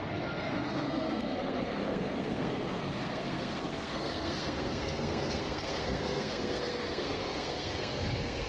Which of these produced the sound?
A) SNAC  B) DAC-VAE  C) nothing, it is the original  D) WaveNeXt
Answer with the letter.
A